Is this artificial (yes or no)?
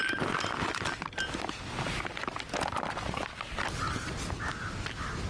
no